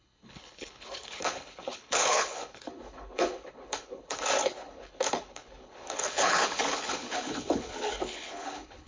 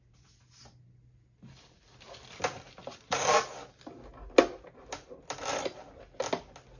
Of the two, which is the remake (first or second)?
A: first